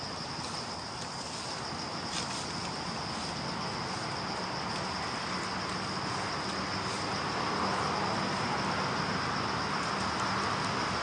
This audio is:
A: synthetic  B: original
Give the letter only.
B